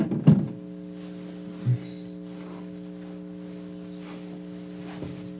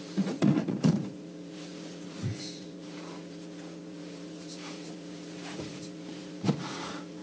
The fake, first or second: second